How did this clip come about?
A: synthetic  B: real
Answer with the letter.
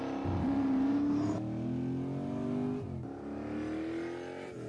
B